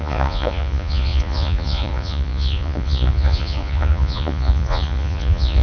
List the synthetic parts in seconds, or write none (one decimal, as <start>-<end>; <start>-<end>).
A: 0.0-5.6